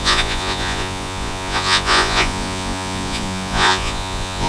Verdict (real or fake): fake